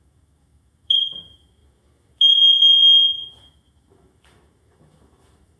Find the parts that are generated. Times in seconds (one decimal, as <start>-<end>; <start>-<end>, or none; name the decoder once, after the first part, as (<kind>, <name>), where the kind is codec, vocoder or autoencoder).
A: 0.0-5.6 (autoencoder, DAC-VAE)